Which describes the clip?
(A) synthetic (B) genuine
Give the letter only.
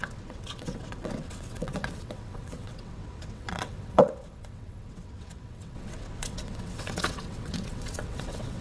A